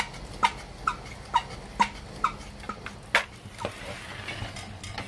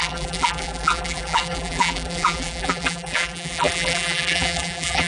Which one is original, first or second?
first